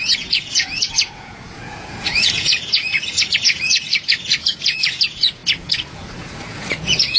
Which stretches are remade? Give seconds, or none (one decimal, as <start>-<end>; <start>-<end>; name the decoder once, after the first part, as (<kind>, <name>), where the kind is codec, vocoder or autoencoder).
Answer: 0.0-7.2 (vocoder, Vocos)